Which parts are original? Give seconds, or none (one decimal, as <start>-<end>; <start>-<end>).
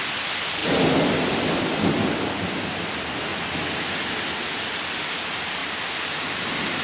0.0-6.8